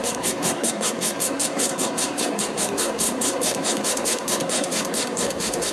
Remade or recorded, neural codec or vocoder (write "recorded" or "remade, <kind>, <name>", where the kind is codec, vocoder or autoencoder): remade, codec, SNAC